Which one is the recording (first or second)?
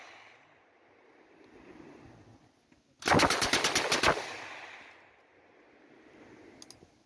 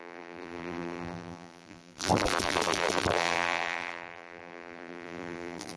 first